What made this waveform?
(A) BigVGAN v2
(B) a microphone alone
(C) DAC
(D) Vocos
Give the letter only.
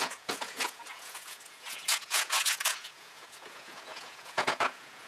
D